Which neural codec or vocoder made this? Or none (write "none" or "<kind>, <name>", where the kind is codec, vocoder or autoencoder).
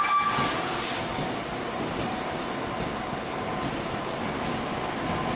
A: none